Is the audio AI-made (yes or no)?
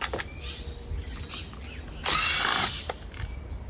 no